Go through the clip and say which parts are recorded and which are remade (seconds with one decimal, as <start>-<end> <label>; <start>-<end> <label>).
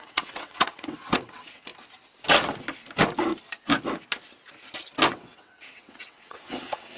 0.0-1.7 remade; 1.7-5.1 recorded; 5.1-7.0 remade